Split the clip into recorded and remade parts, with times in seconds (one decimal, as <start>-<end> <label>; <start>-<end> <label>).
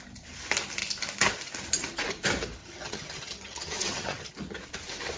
0.0-2.6 recorded; 2.6-4.3 remade; 4.3-5.2 recorded